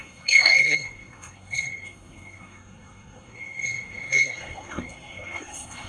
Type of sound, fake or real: fake